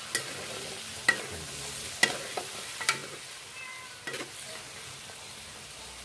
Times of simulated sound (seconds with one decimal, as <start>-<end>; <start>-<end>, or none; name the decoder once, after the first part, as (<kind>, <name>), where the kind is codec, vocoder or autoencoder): none